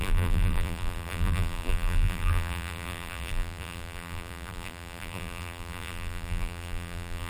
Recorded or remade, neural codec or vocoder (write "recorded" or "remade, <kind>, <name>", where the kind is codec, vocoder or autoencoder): remade, vocoder, BigVGAN v2